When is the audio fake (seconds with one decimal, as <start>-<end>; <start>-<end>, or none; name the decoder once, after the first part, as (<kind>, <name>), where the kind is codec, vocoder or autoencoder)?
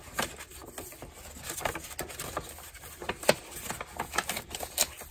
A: none